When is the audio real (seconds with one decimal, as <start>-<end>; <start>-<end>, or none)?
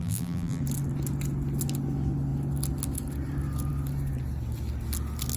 0.6-5.4